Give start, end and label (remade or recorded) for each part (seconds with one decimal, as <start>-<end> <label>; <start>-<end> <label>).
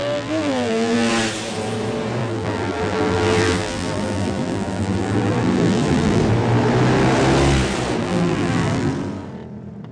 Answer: 0.0-1.1 remade; 1.1-2.2 recorded; 2.2-6.2 remade; 6.2-8.0 recorded; 8.0-8.9 remade; 8.9-9.9 recorded